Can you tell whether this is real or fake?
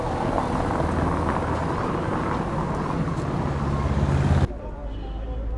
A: real